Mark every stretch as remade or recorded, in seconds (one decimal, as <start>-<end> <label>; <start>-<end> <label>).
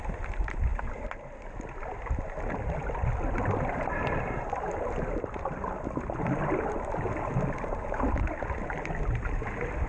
0.0-9.9 recorded